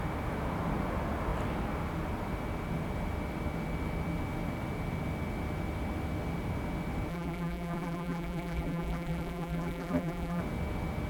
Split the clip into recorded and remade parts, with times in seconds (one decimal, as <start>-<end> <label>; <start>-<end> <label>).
0.0-7.1 recorded; 7.1-10.4 remade; 10.4-11.1 recorded